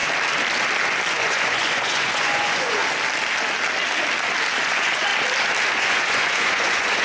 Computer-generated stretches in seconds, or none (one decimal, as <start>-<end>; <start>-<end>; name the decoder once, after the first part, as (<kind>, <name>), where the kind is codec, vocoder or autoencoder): 1.1-2.8 (vocoder, Vocos); 4.6-5.1; 5.7-7.0

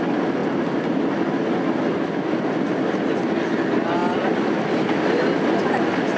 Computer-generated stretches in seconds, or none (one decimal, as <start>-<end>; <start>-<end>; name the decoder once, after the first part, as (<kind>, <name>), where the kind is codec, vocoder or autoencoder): none

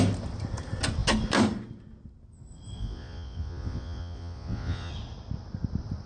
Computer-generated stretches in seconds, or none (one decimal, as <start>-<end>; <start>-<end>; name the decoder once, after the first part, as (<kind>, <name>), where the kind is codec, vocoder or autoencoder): 2.8-4.9 (vocoder, Vocos)

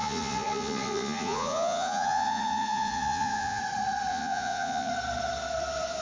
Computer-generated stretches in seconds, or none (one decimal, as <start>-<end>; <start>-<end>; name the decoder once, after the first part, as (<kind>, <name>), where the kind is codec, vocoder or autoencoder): 0.0-3.6 (vocoder, Vocos); 4.1-4.9

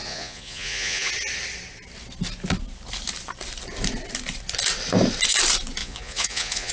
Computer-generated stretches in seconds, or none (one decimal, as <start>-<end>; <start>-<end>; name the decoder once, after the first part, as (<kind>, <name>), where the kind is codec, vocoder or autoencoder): 0.0-1.1 (vocoder, Vocos); 5.8-6.7

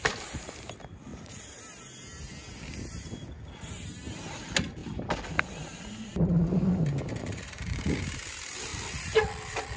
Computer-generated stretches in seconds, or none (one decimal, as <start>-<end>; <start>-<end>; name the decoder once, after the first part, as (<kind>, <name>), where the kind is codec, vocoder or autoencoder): 1.1-1.6 (vocoder, Vocos); 7.2-8.0

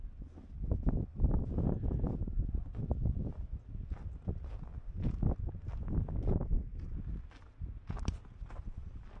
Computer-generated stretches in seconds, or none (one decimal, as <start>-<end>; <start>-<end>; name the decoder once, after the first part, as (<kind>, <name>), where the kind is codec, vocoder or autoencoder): none

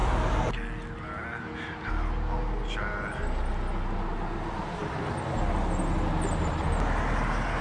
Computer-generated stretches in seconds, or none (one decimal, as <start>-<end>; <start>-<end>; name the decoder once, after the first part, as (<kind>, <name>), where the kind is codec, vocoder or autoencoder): none